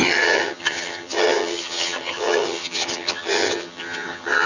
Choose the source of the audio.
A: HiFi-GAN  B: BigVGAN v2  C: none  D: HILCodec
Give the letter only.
A